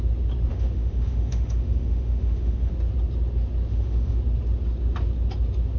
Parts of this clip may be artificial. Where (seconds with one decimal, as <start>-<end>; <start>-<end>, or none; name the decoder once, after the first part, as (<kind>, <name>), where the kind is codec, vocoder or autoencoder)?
0.5-2.7 (autoencoder, DAC-VAE); 3.7-4.2